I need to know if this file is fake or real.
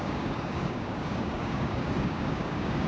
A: fake